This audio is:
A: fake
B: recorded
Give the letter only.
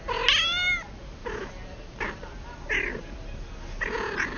B